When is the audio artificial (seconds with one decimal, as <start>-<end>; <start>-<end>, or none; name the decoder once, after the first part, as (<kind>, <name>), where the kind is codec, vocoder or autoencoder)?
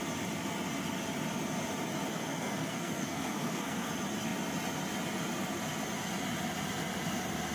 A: 2.1-3.9 (codec, SNAC)